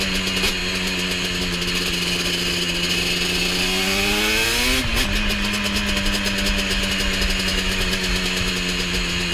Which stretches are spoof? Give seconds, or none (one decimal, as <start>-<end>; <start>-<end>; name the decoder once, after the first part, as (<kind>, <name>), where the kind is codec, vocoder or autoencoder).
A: 7.5-8.5 (autoencoder, DAC-VAE)